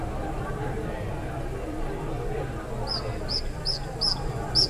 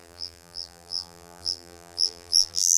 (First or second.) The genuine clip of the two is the first